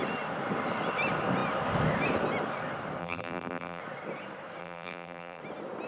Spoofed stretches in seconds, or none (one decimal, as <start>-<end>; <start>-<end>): 3.0-3.8; 4.6-5.4